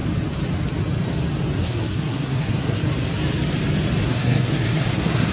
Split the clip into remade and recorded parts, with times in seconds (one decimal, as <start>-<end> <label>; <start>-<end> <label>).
0.0-1.6 recorded; 1.6-2.8 remade; 2.8-4.0 recorded; 4.0-5.3 remade